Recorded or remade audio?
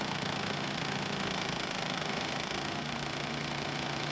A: remade